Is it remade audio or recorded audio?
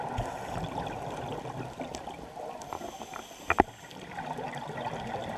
recorded